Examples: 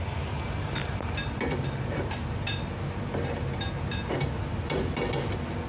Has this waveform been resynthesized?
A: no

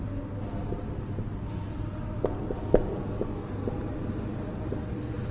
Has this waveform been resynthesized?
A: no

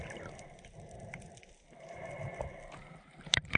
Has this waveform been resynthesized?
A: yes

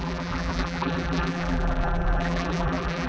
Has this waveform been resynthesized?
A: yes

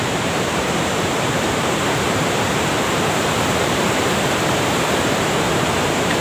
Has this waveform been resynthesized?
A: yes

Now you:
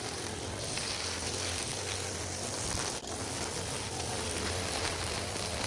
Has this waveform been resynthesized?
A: no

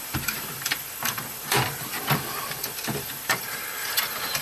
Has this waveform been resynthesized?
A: yes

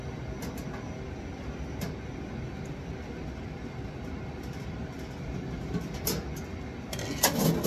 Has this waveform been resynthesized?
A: no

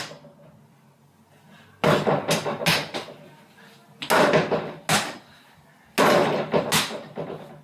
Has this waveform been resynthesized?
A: no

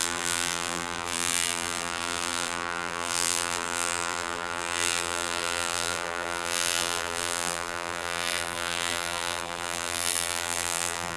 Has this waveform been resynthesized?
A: yes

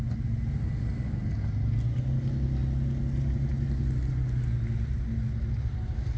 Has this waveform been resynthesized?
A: no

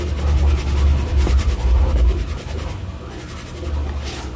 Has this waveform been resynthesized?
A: no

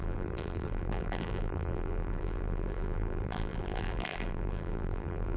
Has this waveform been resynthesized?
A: yes